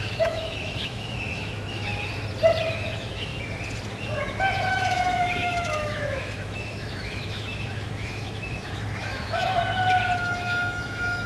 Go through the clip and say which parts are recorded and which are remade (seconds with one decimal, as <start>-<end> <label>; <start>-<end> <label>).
0.0-1.9 remade; 1.9-2.7 recorded; 2.7-3.3 remade; 3.3-4.7 recorded; 4.7-9.6 remade; 9.6-10.2 recorded; 10.2-11.3 remade